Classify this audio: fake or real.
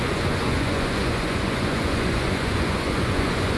fake